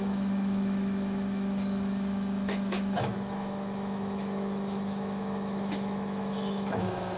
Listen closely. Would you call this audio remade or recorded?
remade